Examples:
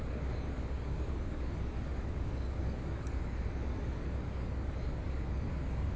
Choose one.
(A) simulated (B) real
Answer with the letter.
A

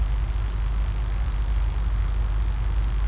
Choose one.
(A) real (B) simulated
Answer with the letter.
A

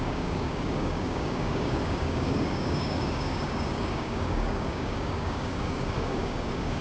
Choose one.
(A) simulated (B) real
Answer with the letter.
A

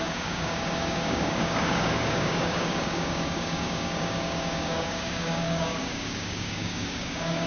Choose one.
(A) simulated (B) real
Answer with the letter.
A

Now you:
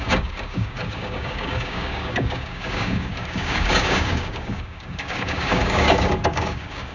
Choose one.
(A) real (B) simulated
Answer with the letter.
B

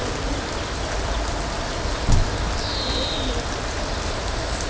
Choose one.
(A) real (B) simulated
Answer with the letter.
A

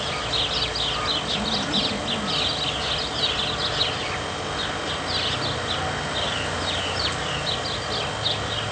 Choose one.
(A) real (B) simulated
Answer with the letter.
A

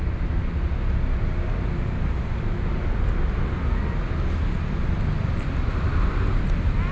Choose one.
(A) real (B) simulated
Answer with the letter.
A